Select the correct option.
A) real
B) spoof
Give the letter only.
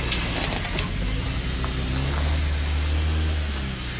A